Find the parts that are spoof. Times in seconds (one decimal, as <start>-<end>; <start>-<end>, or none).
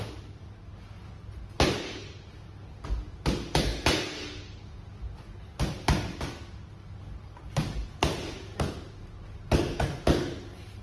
none